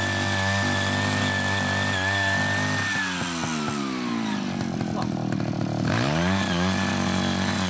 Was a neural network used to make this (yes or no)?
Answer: no